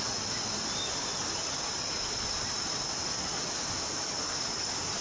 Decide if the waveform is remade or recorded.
recorded